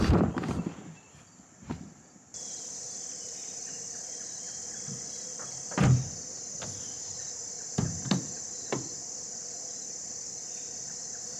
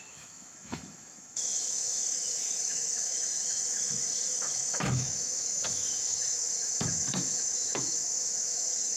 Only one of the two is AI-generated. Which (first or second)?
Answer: second